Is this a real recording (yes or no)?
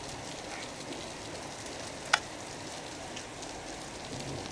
yes